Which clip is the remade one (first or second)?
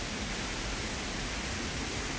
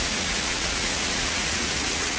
second